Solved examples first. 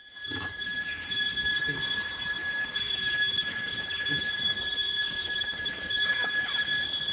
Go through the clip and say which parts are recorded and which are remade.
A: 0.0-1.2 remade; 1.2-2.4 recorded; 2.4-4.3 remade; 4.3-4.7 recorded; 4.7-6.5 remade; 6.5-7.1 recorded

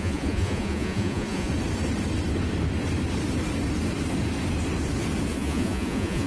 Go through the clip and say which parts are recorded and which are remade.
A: 0.0-1.5 remade; 1.5-5.3 recorded; 5.3-6.3 remade

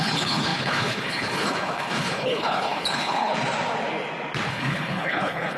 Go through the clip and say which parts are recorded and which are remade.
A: 0.0-3.3 remade; 3.3-4.5 recorded; 4.5-5.6 remade

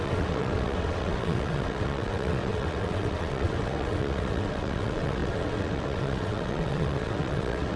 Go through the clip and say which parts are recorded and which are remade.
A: 0.0-7.8 remade

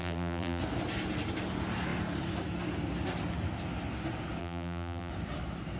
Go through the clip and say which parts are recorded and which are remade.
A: 0.0-0.6 remade; 0.6-4.4 recorded; 4.4-5.1 remade; 5.1-5.8 recorded

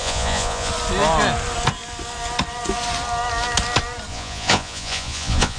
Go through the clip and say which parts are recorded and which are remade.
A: 0.0-0.7 remade; 0.7-4.1 recorded; 4.1-5.6 remade

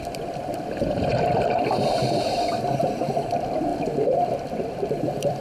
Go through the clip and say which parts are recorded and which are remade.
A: 0.0-5.4 remade